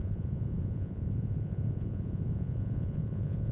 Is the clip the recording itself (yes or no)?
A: no